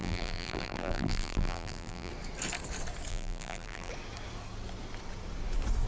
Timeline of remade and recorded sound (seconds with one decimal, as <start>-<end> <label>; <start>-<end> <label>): 0.0-2.1 remade; 2.1-3.1 recorded; 3.1-3.9 remade; 3.9-5.9 recorded